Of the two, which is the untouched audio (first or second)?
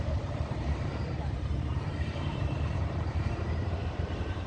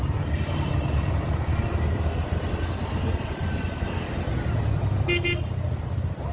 second